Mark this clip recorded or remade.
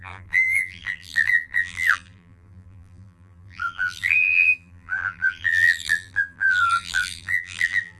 remade